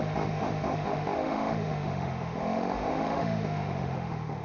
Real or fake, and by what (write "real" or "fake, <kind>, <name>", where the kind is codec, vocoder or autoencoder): fake, autoencoder, DAC-VAE